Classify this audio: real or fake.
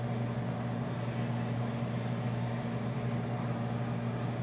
real